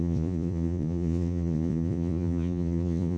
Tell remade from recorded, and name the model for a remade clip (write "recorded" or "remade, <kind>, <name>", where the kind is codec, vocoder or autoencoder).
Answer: remade, vocoder, Vocos